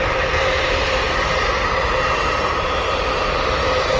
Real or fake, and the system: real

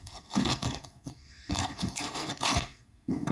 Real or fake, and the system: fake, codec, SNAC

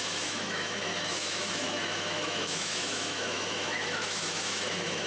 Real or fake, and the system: fake, autoencoder, DAC-VAE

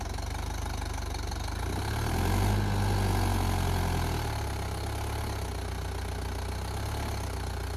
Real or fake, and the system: real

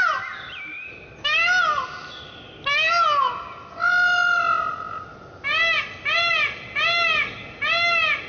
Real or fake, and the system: real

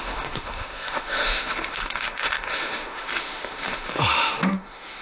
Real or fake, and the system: fake, autoencoder, DAC-VAE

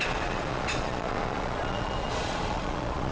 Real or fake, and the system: fake, vocoder, Vocos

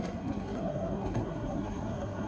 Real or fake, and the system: fake, codec, SNAC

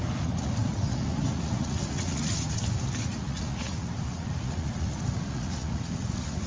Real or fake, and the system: fake, vocoder, Vocos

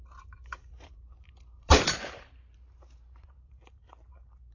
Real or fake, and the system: fake, vocoder, BigVGAN v2